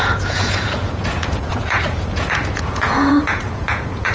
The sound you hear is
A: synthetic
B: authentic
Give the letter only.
A